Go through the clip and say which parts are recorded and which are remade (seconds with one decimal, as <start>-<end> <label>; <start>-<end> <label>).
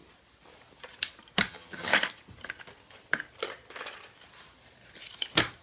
0.0-1.5 recorded; 1.5-1.9 remade; 1.9-5.6 recorded